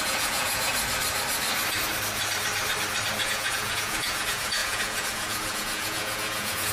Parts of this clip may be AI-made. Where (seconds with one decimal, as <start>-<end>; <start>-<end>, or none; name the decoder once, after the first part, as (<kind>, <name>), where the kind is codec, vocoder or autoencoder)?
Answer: 0.0-0.7 (vocoder, Vocos); 3.2-6.7